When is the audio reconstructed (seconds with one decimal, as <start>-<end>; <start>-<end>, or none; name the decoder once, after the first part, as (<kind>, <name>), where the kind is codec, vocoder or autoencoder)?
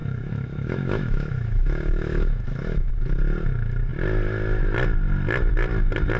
0.0-2.9 (autoencoder, DAC-VAE)